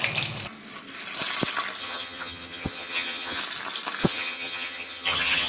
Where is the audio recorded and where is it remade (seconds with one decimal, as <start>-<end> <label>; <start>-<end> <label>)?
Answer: 0.0-1.8 recorded; 1.8-3.4 remade; 3.4-4.0 recorded; 4.0-5.5 remade